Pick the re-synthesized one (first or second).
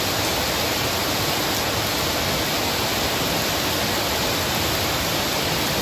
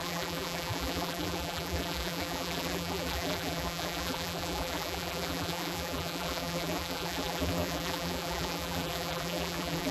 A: second